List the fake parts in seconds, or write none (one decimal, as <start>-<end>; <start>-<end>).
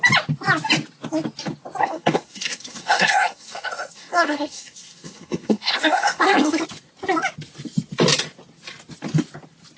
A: 1.8-6.6